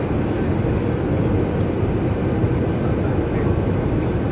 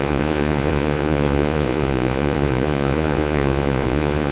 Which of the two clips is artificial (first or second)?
second